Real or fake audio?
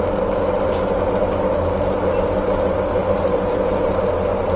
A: real